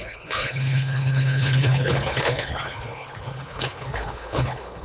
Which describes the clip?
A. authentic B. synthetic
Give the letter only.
B